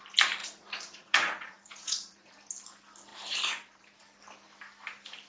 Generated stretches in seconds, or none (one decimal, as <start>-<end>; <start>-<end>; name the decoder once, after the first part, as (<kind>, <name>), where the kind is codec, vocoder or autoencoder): 0.4-2.3 (vocoder, Vocos)